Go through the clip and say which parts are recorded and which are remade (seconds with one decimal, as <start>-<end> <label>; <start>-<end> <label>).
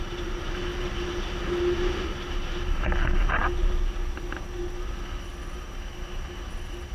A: 0.0-6.9 recorded